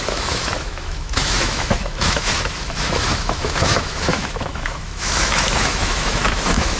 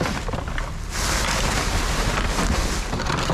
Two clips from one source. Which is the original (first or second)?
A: second